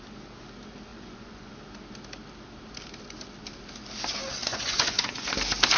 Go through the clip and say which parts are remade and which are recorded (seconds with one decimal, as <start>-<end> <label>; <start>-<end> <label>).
0.0-0.9 recorded; 0.9-1.5 remade; 1.5-4.4 recorded; 4.4-5.3 remade; 5.3-5.8 recorded